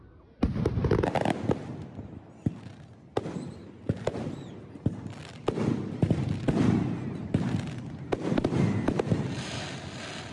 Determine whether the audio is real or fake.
real